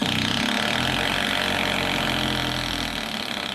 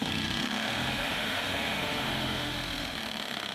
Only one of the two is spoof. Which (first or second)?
second